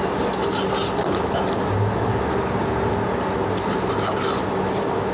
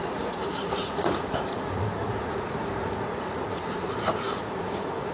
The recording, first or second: first